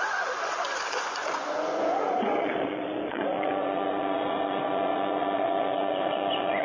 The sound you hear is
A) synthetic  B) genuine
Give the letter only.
A